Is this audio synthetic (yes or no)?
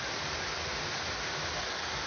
no